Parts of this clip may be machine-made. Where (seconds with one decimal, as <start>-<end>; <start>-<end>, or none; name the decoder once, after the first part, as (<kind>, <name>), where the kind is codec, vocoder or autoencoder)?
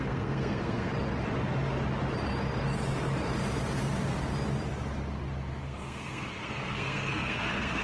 0.0-0.9 (codec, SNAC); 5.6-7.8